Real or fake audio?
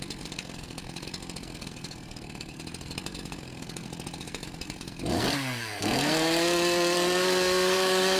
fake